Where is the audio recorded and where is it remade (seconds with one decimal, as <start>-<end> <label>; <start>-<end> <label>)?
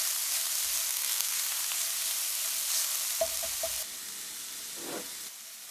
0.0-0.9 recorded; 0.9-1.4 remade; 1.4-5.7 recorded